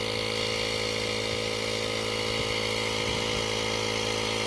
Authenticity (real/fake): real